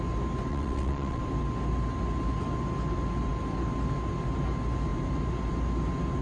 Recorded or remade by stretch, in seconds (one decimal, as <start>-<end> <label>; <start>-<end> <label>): 0.0-0.5 recorded; 0.5-1.2 remade; 1.2-6.2 recorded